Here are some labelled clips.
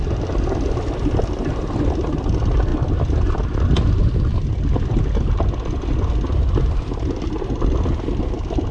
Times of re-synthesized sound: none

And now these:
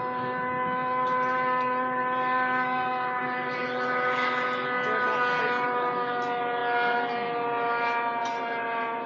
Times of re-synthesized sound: none

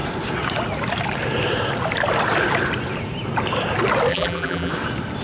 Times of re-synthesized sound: 4.1-4.7 (vocoder, BigVGAN v2)